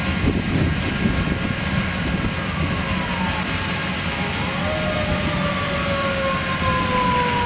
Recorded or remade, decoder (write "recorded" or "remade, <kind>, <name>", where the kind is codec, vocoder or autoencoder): recorded